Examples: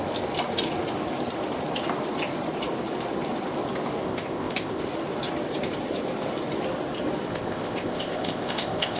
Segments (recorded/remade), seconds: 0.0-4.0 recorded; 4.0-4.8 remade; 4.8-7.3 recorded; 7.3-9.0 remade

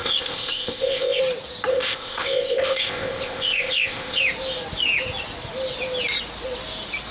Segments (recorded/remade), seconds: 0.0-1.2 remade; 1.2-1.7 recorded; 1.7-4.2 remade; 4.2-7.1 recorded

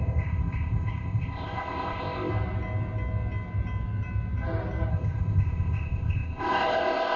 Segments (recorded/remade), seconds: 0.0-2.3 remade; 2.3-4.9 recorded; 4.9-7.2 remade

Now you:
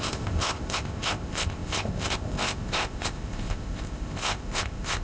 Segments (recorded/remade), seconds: 0.0-5.0 remade

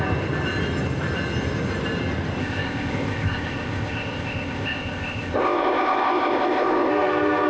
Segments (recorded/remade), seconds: 0.0-2.4 recorded; 2.4-6.9 remade; 6.9-7.5 recorded

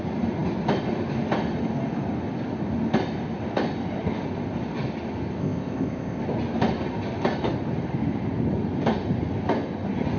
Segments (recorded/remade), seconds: 0.0-5.4 recorded; 5.4-6.2 remade; 6.2-10.2 recorded

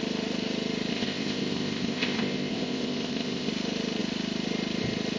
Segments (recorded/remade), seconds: 0.0-0.9 recorded; 0.9-3.5 remade; 3.5-5.2 recorded

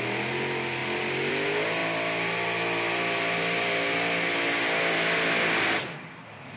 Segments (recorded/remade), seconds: 0.0-6.6 recorded